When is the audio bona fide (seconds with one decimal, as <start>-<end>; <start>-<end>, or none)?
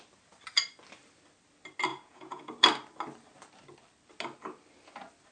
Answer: 0.0-1.9; 2.5-5.3